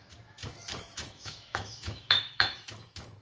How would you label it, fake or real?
fake